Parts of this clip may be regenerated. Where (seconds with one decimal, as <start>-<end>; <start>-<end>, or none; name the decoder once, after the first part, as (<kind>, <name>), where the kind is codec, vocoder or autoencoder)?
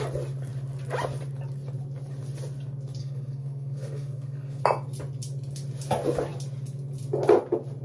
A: 3.0-4.6 (codec, SNAC)